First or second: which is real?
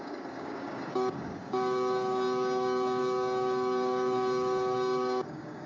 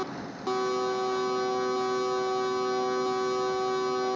second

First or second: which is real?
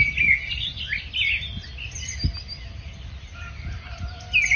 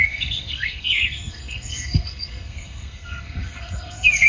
first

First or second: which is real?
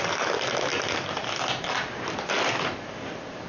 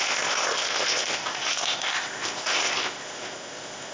first